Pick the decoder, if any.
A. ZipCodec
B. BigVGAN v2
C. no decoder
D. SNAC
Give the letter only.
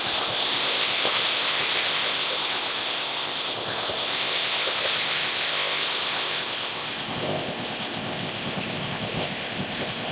A